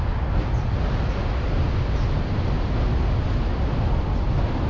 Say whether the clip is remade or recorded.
recorded